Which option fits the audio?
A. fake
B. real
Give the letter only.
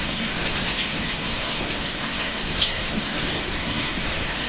A